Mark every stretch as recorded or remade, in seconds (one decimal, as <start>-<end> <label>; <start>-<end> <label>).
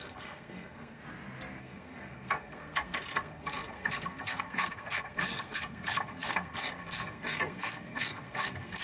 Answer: 0.0-1.0 remade; 1.0-1.6 recorded; 1.6-8.8 remade